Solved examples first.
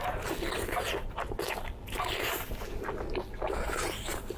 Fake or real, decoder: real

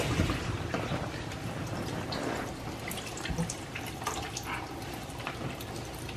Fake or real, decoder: fake, vocoder, BigVGAN v2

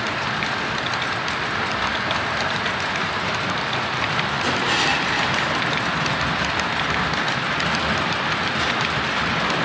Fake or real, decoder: real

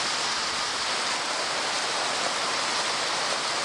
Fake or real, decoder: real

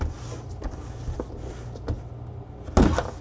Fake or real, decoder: real